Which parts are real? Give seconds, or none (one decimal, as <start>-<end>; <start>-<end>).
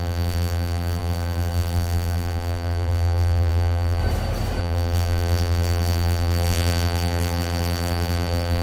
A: 4.0-4.6